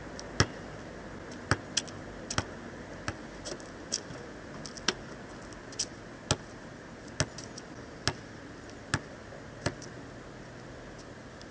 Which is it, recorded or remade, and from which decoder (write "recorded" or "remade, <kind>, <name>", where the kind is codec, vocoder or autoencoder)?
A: recorded